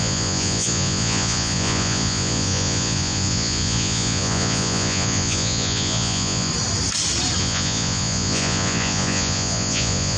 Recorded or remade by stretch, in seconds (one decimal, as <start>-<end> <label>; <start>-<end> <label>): 0.0-6.5 remade; 6.5-7.4 recorded; 7.4-10.2 remade